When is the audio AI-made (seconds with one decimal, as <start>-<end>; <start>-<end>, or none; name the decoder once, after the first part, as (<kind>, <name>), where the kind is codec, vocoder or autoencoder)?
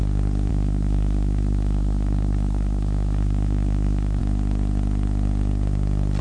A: 0.5-4.2 (codec, SNAC)